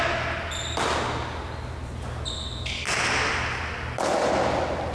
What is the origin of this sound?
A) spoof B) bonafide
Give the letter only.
B